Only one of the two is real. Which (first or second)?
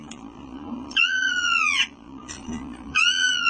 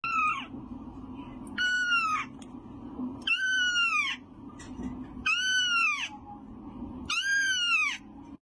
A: second